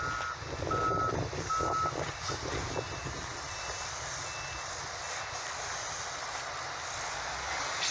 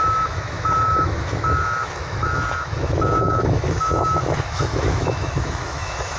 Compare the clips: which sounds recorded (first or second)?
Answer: first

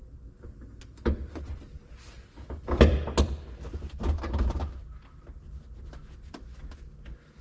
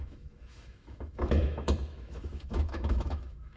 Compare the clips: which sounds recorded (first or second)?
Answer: first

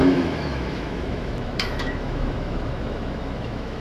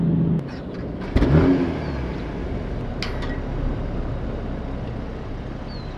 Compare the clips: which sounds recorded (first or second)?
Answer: second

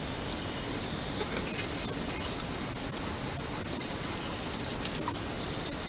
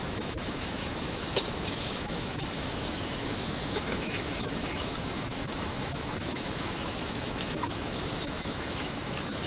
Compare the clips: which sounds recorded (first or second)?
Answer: first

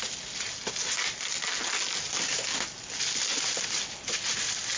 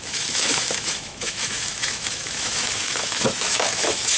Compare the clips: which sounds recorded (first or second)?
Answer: first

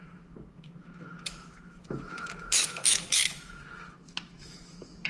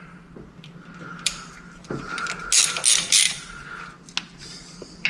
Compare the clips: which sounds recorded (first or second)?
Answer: second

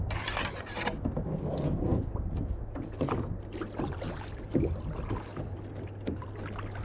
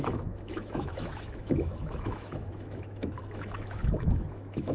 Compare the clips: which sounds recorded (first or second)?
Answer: first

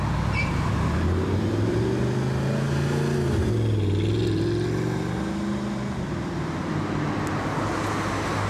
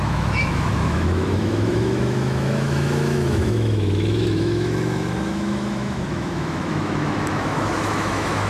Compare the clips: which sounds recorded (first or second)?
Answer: first